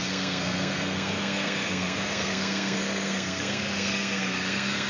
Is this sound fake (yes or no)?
yes